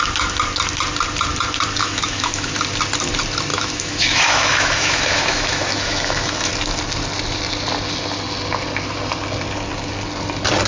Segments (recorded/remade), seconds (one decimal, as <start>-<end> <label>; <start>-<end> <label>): 0.0-1.8 recorded; 1.8-2.5 remade; 2.5-3.5 recorded; 3.5-6.5 remade; 6.5-10.7 recorded